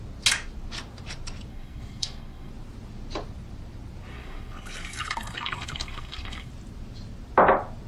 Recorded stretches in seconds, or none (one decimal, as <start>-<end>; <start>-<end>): 0.0-1.5; 2.5-4.1; 6.5-7.9